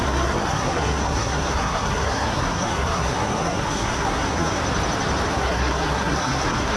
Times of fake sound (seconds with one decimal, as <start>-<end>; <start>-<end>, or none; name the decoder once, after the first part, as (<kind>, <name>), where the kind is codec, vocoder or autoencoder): 0.0-4.6 (codec, SNAC); 5.3-6.8

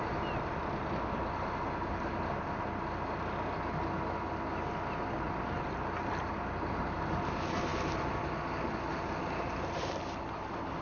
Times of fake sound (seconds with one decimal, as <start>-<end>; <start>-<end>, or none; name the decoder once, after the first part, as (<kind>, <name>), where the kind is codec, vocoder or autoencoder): none

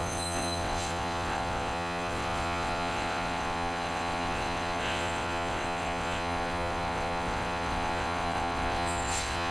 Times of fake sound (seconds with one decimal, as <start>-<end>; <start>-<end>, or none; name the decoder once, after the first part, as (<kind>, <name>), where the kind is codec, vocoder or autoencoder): 0.0-9.5 (vocoder, WaveNeXt)